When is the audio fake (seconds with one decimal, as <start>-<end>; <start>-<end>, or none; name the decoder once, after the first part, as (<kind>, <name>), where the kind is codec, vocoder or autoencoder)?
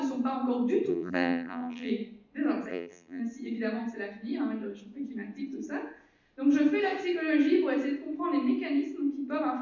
0.9-1.9 (vocoder, BigVGAN v2); 2.7-3.2